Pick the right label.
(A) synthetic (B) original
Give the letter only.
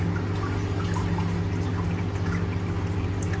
B